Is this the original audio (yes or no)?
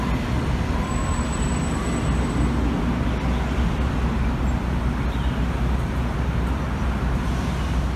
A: yes